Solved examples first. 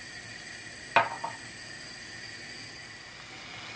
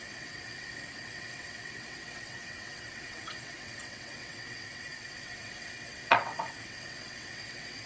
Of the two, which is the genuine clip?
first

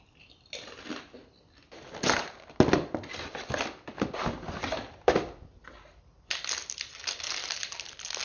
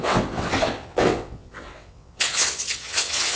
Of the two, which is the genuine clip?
first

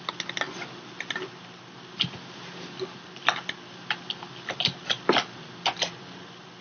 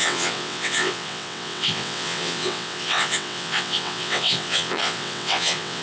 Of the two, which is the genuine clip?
first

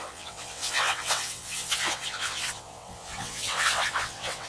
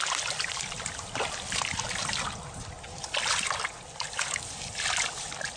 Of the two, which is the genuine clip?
second